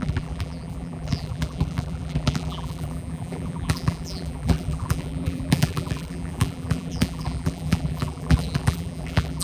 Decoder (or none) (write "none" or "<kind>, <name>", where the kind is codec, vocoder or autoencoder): vocoder, BigVGAN v2